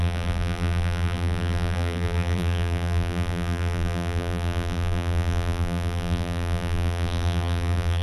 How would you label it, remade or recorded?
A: remade